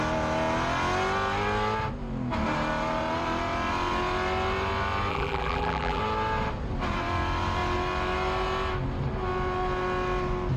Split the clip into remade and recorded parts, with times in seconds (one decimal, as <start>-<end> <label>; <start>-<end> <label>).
0.0-5.1 recorded; 5.1-6.0 remade; 6.0-10.6 recorded